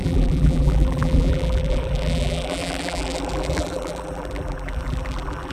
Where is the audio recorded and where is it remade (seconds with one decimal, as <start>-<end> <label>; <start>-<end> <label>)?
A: 0.0-5.5 remade